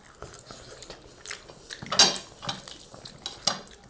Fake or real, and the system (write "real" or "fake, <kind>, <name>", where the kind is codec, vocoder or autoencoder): real